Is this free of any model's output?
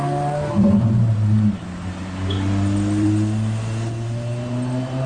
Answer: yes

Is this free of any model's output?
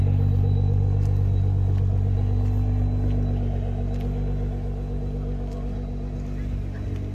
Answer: yes